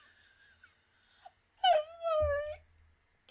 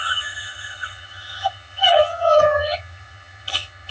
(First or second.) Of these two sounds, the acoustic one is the first